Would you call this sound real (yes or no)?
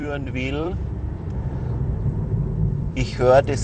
no